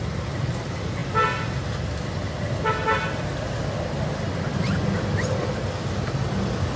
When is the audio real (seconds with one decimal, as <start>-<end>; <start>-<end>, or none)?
0.0-6.8